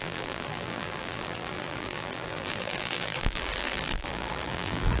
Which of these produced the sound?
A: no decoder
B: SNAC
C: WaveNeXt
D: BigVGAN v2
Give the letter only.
D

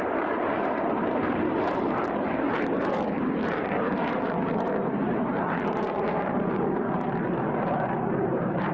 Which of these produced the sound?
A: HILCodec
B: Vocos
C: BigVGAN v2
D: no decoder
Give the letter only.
C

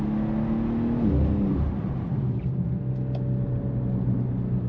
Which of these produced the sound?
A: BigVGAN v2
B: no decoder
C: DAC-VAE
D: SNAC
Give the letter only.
B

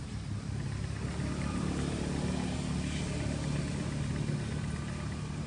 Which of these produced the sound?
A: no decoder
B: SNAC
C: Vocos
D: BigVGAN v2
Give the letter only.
D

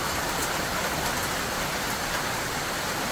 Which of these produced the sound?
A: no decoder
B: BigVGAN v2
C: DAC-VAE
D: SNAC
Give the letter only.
A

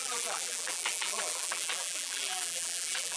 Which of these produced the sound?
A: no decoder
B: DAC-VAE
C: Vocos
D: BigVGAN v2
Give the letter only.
D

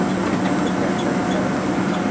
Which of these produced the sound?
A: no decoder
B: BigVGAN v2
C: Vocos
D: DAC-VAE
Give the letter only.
A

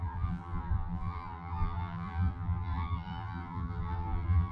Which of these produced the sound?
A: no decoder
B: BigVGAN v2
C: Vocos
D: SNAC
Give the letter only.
B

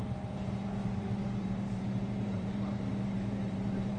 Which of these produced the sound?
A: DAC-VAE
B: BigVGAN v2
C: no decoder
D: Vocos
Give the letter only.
B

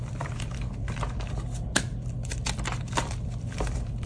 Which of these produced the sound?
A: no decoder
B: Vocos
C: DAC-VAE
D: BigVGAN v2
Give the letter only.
D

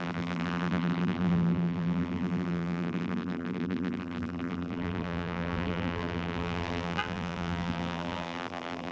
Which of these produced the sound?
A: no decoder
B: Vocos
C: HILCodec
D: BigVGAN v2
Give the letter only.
D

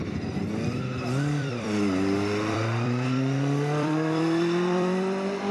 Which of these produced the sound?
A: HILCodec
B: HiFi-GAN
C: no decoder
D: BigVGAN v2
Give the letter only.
D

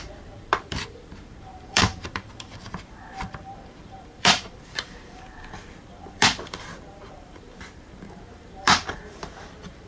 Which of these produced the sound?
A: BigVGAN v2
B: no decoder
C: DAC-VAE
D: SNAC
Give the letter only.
A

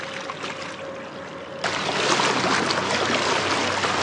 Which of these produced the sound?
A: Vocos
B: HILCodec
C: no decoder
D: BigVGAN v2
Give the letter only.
C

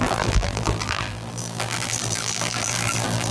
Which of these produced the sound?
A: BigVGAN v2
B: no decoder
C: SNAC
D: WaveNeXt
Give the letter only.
A